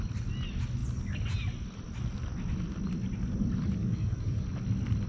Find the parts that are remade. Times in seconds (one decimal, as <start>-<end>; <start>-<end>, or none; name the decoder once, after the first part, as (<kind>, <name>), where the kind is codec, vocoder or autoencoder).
3.8-4.5 (codec, DAC)